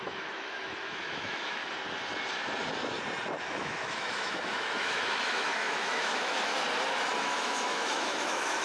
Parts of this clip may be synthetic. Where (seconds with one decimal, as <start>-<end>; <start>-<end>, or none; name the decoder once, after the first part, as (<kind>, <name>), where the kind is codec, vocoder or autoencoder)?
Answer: 0.0-1.6 (autoencoder, DAC-VAE); 3.4-6.5; 7.2-8.6

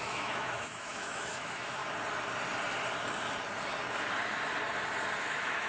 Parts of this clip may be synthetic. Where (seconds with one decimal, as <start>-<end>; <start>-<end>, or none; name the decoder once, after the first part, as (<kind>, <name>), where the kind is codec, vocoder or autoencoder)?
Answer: 0.0-1.8 (autoencoder, DAC-VAE); 5.2-5.7

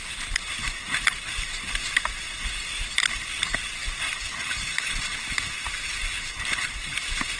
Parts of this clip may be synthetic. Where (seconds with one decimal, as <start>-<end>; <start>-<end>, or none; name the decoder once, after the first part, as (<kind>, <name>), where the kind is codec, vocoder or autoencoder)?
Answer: none

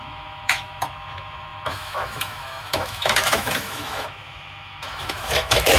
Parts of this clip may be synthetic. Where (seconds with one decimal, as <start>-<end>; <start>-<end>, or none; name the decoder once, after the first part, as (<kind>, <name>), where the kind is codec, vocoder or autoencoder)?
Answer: 0.0-5.8 (autoencoder, DAC-VAE)

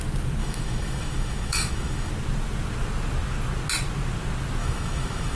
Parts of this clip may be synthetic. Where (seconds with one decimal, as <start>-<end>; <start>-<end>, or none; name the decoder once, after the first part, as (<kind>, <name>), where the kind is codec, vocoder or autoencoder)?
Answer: 0.4-2.1 (autoencoder, DAC-VAE); 4.6-5.4

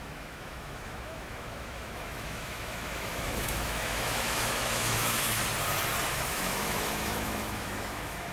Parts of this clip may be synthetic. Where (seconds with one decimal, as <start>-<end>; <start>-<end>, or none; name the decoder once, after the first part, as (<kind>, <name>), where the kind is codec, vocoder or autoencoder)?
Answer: 0.0-5.4 (autoencoder, DAC-VAE); 6.1-8.3